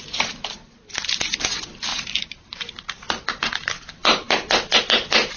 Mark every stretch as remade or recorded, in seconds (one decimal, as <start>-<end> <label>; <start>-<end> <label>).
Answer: 0.0-1.9 recorded; 1.9-3.3 remade; 3.3-4.0 recorded; 4.0-4.8 remade; 4.8-5.4 recorded